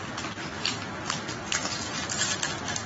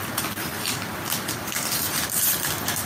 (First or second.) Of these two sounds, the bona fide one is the first